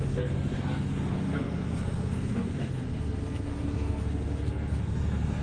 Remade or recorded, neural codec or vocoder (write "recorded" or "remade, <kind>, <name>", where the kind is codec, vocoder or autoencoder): remade, codec, SNAC